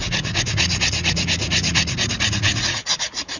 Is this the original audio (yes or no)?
no